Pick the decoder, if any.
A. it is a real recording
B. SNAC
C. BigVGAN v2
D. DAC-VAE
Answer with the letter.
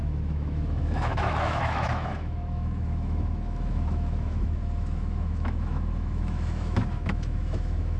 D